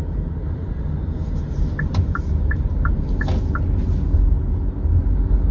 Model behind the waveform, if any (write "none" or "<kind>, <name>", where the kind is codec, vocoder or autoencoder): none